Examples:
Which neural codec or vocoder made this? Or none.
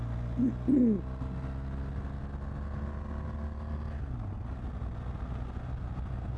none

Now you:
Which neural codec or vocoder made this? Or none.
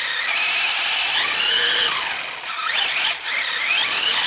none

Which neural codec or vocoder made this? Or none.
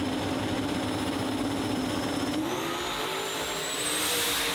none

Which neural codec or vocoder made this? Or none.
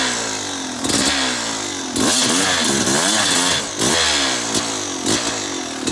none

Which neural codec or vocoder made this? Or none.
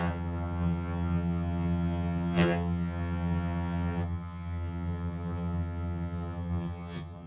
vocoder, HiFi-GAN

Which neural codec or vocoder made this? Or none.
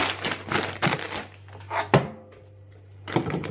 none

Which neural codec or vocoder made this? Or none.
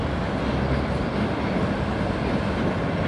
none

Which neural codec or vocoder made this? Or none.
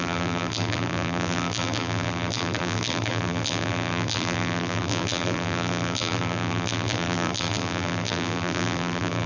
vocoder, BigVGAN v2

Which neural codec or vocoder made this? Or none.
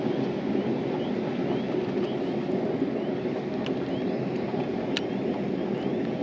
none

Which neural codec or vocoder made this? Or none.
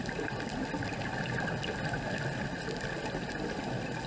none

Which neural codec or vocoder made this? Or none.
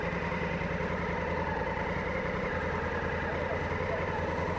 none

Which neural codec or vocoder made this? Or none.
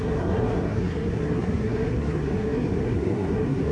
codec, SNAC